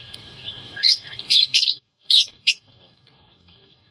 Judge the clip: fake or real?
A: fake